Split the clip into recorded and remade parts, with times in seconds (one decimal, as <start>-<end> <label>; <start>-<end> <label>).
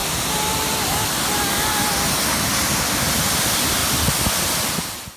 0.0-5.2 recorded